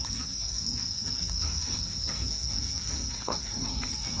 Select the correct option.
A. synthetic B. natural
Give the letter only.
A